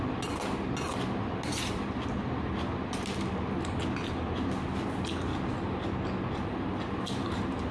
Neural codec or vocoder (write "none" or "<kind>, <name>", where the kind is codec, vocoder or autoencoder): none